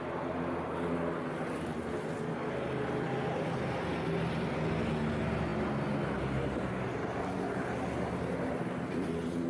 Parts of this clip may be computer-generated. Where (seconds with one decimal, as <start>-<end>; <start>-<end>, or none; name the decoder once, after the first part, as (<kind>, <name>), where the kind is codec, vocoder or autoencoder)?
none